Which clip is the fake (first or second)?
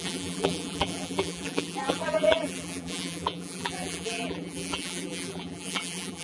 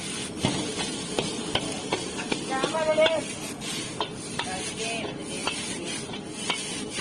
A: first